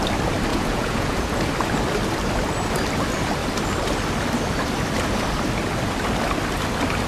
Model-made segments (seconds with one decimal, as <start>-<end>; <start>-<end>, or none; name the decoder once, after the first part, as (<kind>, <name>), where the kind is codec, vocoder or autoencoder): 0.5-1.5 (vocoder, Vocos)